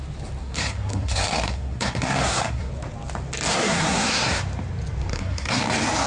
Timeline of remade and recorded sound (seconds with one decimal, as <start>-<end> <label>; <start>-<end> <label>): 0.0-0.4 recorded; 0.4-2.7 remade; 2.7-3.5 recorded; 3.5-4.4 remade; 4.4-5.1 recorded; 5.1-5.6 remade; 5.6-6.1 recorded

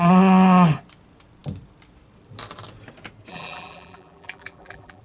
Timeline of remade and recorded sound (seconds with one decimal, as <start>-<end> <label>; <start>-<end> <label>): 0.0-3.3 recorded; 3.3-5.0 remade

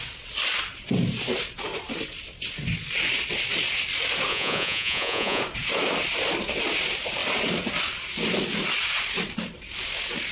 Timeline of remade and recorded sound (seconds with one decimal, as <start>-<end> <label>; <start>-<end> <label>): 0.0-4.3 recorded; 4.3-5.4 remade; 5.4-10.3 recorded

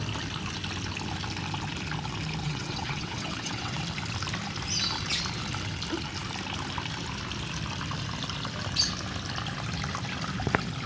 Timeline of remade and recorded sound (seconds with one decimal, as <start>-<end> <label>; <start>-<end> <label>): 0.0-2.4 recorded; 2.4-3.8 remade; 3.8-10.9 recorded

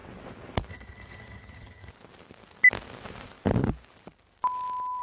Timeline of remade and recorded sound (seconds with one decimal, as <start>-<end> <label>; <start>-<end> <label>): 0.0-0.7 recorded; 0.7-1.9 remade; 1.9-5.0 recorded